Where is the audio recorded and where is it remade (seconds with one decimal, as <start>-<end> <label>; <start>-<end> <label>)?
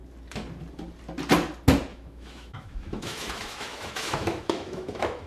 0.0-1.9 recorded; 1.9-5.3 remade